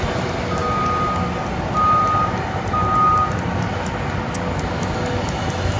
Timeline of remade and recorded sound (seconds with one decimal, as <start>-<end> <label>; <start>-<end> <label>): 0.0-5.8 recorded